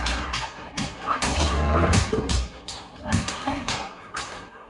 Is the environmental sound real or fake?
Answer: fake